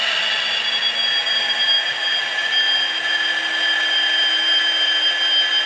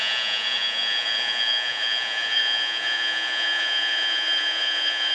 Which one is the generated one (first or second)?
second